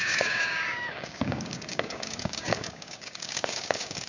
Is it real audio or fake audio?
fake